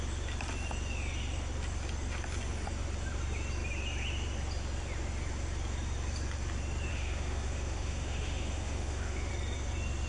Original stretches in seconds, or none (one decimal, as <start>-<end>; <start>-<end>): 0.0-6.9; 9.3-10.1

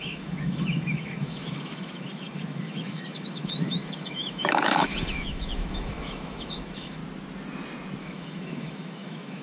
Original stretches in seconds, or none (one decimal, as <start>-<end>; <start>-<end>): 7.0-8.0

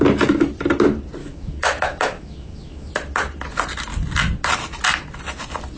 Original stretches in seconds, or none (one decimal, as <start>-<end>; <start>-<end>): 0.0-1.2; 2.9-5.8